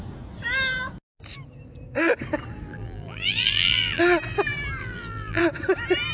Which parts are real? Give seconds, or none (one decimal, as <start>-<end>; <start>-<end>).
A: 0.0-2.7; 4.0-4.8; 5.4-6.1